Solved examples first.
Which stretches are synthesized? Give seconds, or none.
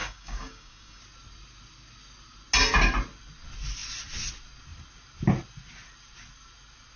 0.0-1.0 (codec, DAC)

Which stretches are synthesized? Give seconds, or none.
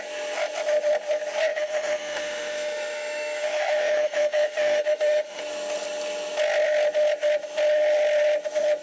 1.5-5.4 (autoencoder, DAC-VAE)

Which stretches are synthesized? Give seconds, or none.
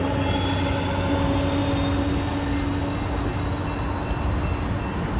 none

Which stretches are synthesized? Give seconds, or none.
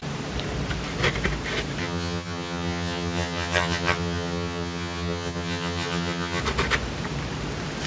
1.8-6.4 (vocoder, HiFi-GAN)